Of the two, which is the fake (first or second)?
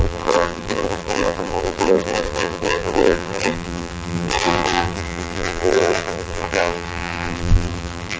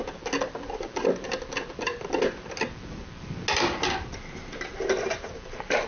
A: first